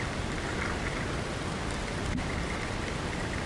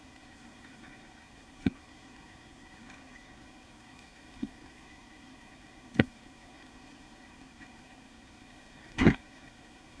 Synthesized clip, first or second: second